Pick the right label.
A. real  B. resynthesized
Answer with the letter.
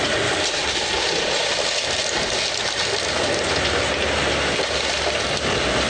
A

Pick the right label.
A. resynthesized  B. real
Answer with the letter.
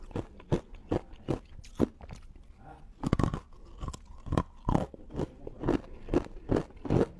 B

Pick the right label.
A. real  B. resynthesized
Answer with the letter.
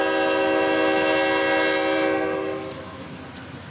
A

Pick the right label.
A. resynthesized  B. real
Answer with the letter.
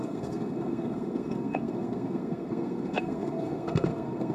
A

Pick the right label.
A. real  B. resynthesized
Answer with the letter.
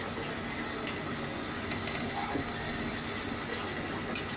A